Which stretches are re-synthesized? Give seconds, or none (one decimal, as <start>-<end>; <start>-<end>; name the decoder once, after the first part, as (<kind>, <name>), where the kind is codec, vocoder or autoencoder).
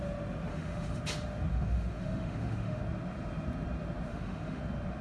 0.5-1.0 (autoencoder, DAC-VAE); 1.5-2.8; 4.1-4.6